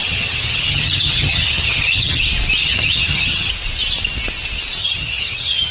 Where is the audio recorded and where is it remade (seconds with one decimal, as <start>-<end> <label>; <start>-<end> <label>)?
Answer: 0.0-2.2 remade; 2.2-2.6 recorded; 2.6-3.5 remade; 3.5-4.8 recorded; 4.8-5.7 remade